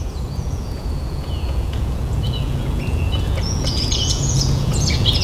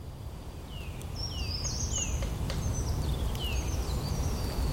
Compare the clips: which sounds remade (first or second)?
first